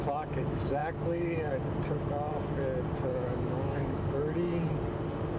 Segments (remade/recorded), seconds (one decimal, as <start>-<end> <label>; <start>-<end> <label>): 0.0-0.8 recorded; 0.8-1.5 remade; 1.5-3.1 recorded; 3.1-4.1 remade; 4.1-5.4 recorded